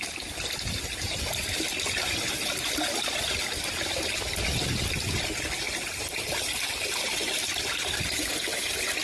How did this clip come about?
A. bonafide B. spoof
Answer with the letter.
A